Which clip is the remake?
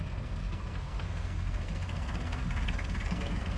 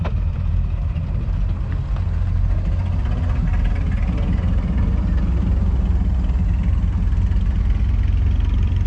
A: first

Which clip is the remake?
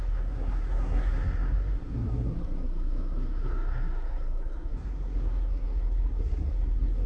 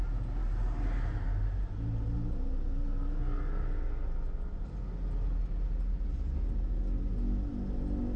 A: first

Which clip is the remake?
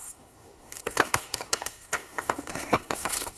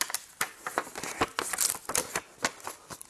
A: first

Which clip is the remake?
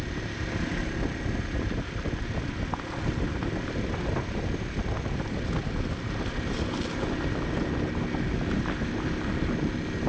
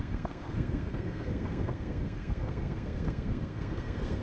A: second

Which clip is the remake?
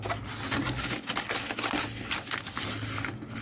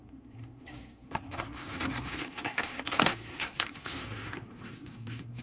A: second